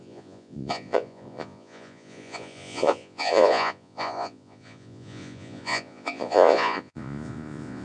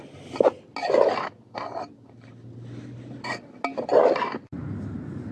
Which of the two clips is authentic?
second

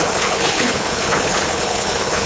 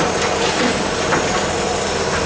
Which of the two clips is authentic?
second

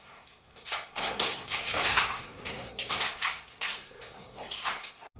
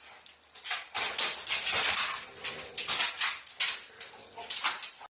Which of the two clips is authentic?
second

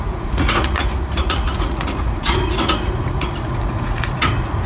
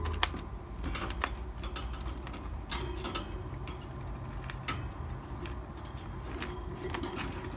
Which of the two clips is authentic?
second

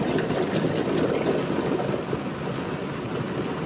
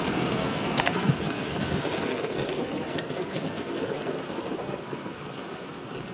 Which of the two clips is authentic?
first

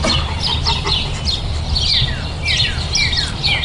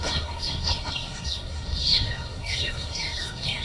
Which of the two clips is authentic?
first